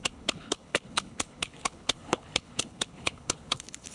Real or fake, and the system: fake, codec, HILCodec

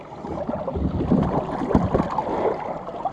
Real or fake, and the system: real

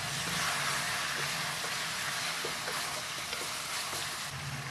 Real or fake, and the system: real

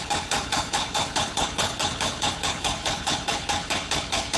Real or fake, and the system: fake, codec, HILCodec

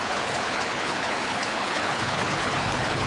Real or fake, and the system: fake, codec, HILCodec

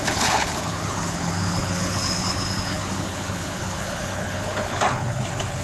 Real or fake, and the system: fake, codec, HILCodec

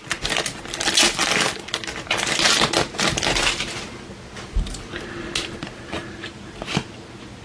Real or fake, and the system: real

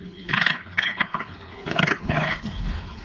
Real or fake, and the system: fake, codec, HILCodec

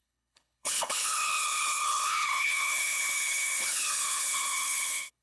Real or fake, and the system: fake, codec, HILCodec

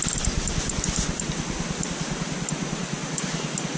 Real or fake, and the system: real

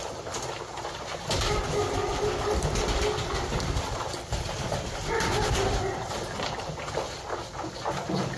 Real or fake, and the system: real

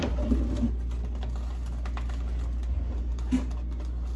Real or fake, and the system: real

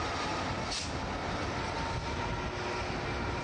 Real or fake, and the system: real